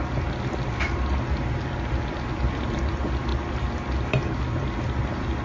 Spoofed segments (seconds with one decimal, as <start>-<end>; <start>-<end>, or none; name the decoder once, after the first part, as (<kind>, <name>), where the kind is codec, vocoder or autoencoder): none